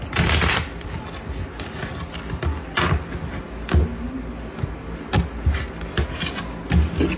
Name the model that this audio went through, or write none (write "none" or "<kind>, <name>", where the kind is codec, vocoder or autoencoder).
none